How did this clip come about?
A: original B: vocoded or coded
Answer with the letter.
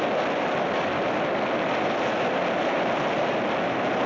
A